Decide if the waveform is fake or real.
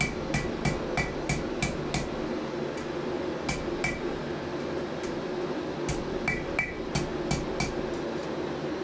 real